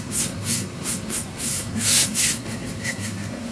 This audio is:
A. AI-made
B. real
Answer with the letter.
A